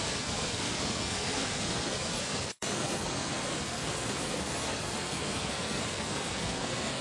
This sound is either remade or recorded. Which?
remade